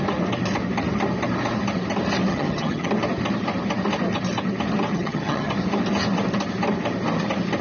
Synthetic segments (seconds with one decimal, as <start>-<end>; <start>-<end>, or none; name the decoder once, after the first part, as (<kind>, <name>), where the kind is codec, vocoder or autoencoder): 2.3-2.9 (vocoder, HiFi-GAN); 4.9-5.5